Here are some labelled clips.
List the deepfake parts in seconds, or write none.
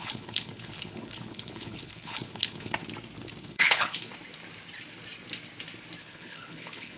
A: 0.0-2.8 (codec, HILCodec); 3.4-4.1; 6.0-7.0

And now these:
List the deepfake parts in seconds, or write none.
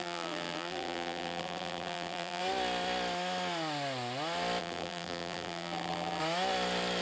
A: 0.0-2.4 (vocoder, BigVGAN v2); 4.6-6.2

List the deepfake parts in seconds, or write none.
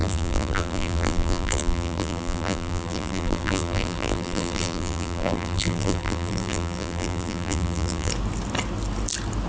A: 0.0-8.1 (vocoder, BigVGAN v2)